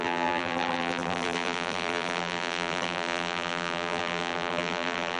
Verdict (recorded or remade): remade